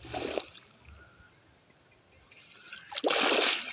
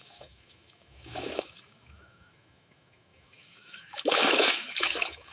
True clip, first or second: first